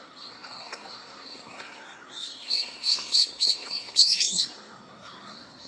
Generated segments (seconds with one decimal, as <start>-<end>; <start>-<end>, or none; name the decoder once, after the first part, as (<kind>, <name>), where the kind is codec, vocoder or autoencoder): 0.0-5.7 (codec, SNAC)